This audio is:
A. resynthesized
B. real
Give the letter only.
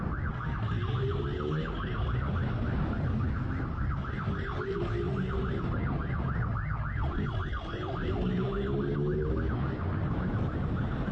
B